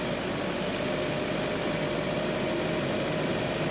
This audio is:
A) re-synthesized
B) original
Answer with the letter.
B